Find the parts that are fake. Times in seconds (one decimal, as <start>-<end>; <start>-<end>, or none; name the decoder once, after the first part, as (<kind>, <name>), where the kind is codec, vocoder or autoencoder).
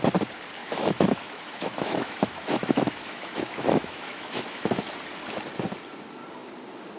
0.6-4.8 (autoencoder, DAC-VAE)